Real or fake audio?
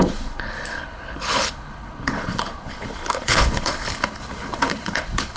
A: fake